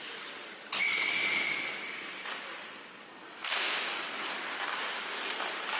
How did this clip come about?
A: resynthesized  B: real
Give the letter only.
B